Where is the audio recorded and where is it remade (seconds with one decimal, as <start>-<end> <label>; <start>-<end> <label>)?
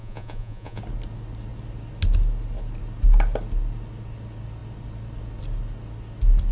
0.0-0.8 remade; 0.8-6.5 recorded